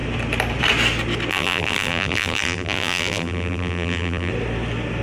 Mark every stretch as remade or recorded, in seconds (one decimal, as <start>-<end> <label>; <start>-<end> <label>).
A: 0.0-1.3 recorded; 1.3-4.3 remade; 4.3-5.0 recorded